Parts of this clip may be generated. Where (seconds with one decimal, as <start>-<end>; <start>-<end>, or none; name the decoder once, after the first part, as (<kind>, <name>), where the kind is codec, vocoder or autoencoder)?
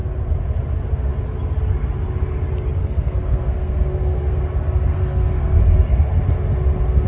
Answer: 2.8-4.4 (codec, SNAC); 4.9-5.6